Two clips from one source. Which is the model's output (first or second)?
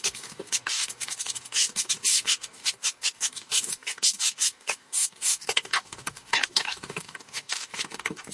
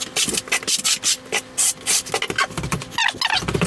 first